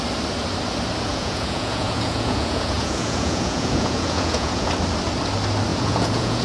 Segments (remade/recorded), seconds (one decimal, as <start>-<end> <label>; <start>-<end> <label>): 0.0-1.1 recorded; 1.1-4.7 remade; 4.7-5.7 recorded; 5.7-6.4 remade